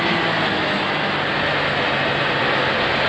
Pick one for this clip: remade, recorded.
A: recorded